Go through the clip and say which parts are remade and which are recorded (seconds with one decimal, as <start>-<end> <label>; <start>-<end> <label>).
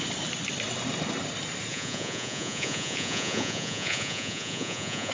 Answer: 0.0-1.7 recorded; 1.7-5.1 remade